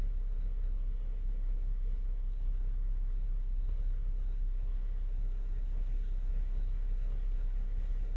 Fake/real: fake